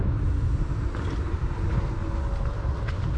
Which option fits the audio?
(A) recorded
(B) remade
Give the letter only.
A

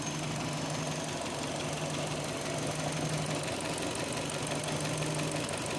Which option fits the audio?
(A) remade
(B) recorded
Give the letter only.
B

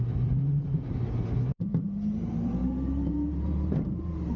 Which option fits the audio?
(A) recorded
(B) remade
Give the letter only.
B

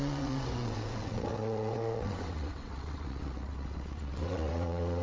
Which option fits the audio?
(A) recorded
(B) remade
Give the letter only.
B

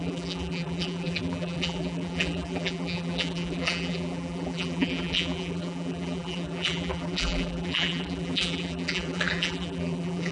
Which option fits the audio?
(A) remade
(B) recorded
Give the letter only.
A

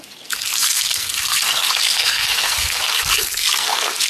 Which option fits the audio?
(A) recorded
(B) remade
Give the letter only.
B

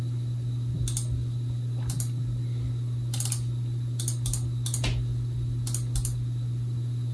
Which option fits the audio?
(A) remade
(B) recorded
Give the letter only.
B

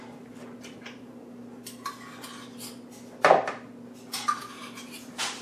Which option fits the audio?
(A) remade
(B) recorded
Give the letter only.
B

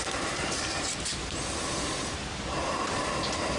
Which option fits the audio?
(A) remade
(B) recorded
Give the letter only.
B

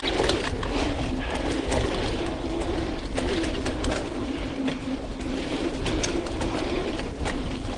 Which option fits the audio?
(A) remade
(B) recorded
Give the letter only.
B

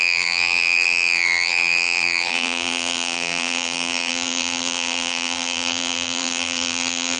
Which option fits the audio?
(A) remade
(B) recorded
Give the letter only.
A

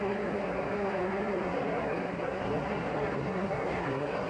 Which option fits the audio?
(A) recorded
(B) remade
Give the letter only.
B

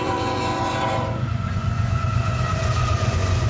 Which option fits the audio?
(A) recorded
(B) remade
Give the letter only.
B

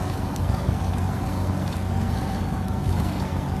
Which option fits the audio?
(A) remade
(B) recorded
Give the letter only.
A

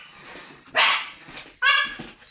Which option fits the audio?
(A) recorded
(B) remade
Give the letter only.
A